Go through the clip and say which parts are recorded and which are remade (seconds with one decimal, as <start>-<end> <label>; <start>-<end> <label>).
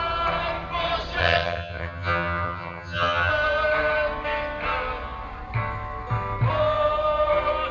0.0-1.2 recorded; 1.2-3.3 remade; 3.3-7.7 recorded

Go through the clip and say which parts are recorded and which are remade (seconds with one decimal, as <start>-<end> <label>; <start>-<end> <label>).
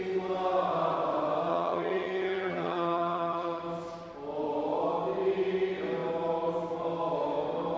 0.0-1.5 recorded; 1.5-3.6 remade; 3.6-7.8 recorded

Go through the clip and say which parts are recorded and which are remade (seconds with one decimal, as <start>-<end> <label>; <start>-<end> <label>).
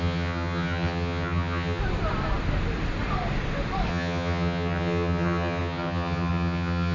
0.0-1.8 remade; 1.8-3.9 recorded; 3.9-6.9 remade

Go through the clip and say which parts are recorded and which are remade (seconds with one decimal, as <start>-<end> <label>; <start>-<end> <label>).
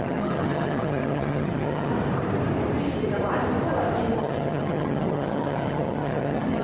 0.0-1.9 remade; 1.9-4.2 recorded; 4.2-6.6 remade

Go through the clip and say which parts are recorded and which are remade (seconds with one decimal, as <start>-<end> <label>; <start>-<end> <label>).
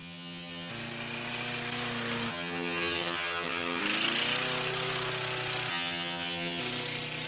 0.0-0.7 remade; 0.7-2.3 recorded; 2.3-3.8 remade; 3.8-5.7 recorded; 5.7-6.6 remade; 6.6-7.3 recorded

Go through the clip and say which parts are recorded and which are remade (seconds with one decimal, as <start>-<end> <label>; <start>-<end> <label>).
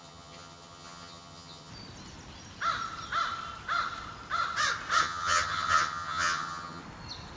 0.0-1.7 remade; 1.7-5.0 recorded; 5.0-6.8 remade; 6.8-7.4 recorded